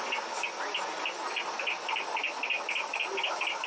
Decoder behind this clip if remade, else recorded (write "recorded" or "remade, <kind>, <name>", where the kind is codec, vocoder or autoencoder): recorded